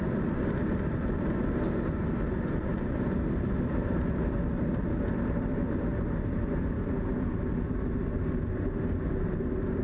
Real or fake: real